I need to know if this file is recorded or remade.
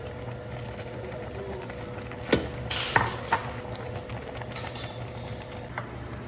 recorded